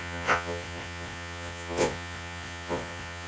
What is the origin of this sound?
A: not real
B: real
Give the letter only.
A